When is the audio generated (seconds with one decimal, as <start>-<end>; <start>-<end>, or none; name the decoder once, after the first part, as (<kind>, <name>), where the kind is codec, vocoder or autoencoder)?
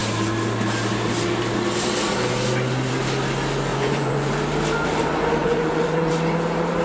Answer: 3.7-4.3 (vocoder, Vocos); 5.4-6.1